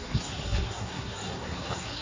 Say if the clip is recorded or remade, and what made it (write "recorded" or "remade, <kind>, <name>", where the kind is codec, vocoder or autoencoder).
remade, codec, SNAC